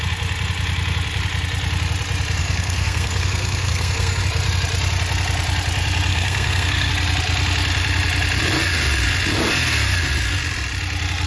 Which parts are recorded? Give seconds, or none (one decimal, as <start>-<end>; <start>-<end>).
0.0-2.4; 4.2-6.1; 6.9-11.3